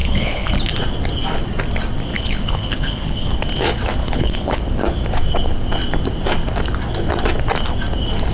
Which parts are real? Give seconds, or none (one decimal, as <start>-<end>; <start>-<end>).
0.5-2.1; 3.3-4.0; 4.6-8.3

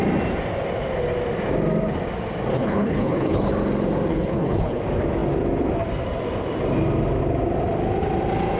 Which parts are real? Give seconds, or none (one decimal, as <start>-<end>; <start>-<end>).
0.0-2.5; 3.5-4.1; 4.8-8.6

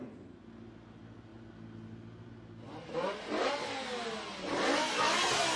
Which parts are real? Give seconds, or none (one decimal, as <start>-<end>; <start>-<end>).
0.0-5.6

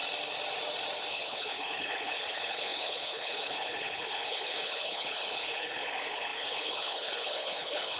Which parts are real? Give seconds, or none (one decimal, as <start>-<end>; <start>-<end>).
0.0-1.1

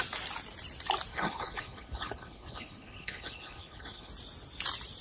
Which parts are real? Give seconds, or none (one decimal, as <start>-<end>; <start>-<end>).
0.0-1.1; 4.1-5.0

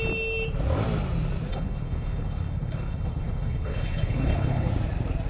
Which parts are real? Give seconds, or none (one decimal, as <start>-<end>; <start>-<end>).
0.0-1.5; 4.7-5.3

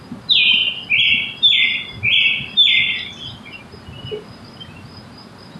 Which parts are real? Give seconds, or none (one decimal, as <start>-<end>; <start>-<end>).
0.0-5.6